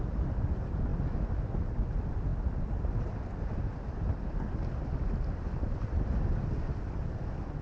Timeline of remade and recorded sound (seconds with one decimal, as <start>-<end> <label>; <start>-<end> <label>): 0.0-7.6 recorded